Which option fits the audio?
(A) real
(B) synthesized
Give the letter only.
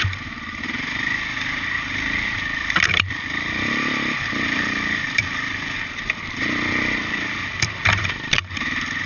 B